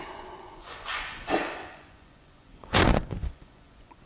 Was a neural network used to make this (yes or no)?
yes